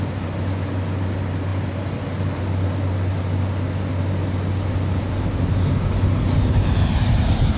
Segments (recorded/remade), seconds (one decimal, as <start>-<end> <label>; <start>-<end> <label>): 0.0-7.6 recorded